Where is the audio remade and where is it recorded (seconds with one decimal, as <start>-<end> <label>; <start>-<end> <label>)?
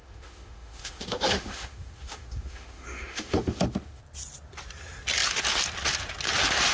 0.0-4.0 remade; 4.0-6.7 recorded